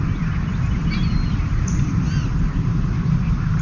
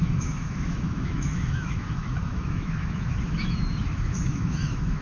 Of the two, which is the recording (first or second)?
first